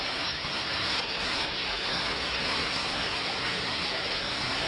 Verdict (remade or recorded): remade